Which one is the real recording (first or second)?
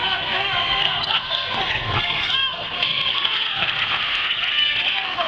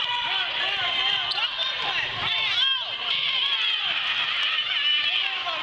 second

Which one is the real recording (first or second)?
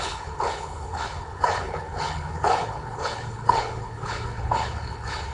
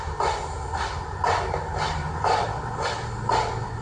second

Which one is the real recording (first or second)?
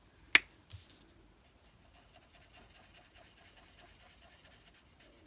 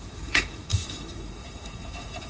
first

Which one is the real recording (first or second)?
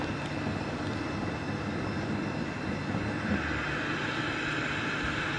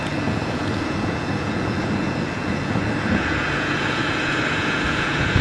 first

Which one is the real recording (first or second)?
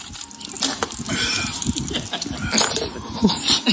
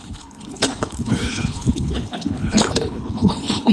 first